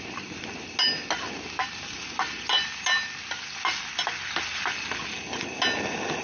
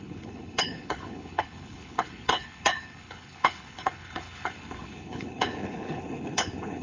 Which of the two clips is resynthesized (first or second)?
second